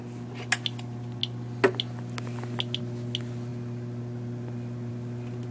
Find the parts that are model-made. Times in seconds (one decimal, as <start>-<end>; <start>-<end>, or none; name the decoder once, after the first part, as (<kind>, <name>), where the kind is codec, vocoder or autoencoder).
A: none